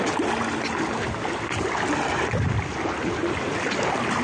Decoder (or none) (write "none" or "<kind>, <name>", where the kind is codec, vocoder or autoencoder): none